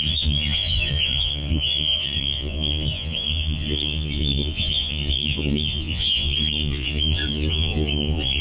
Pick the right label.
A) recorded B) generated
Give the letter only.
B